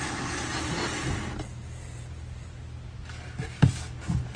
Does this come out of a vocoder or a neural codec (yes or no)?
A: no